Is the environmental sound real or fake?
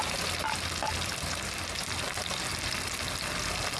real